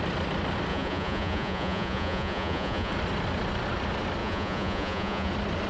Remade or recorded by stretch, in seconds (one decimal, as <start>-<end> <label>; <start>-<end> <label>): 0.0-0.7 recorded; 0.7-2.9 remade; 2.9-4.2 recorded; 4.2-5.3 remade; 5.3-5.7 recorded